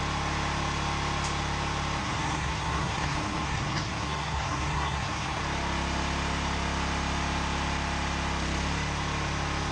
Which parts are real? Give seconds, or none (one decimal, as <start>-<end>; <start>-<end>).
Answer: 0.0-2.0; 5.4-9.7